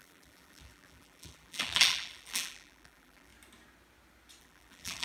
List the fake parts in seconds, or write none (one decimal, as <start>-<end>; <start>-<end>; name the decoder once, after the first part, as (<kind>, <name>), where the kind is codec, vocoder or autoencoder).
0.0-3.3 (vocoder, BigVGAN v2); 4.4-5.0